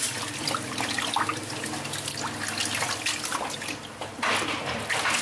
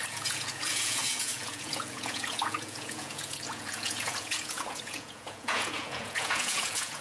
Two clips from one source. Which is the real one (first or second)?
first